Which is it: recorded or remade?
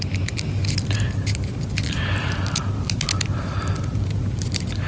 recorded